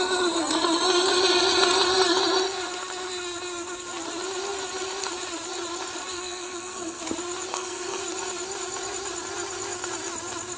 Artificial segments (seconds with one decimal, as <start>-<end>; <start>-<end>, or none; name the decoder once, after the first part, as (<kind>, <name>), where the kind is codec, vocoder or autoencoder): 6.1-7.0 (codec, SNAC); 7.5-8.0